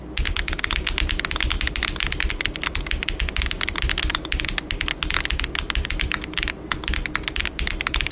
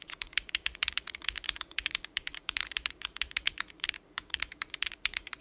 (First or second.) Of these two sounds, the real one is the first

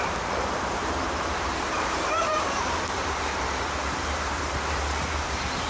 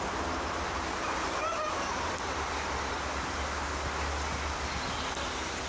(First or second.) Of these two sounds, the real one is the second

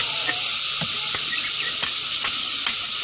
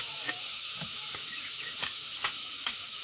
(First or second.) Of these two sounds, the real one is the first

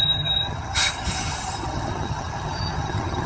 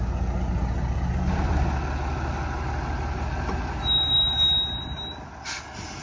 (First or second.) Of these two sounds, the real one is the second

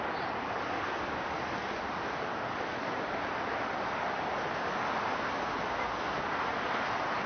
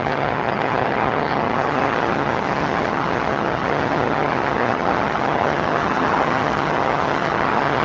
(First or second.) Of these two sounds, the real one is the first